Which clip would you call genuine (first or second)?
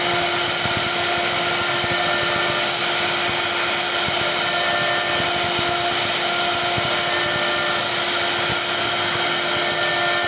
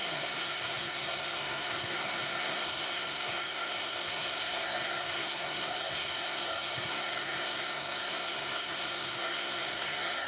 first